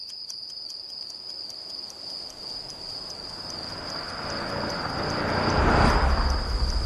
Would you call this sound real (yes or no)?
yes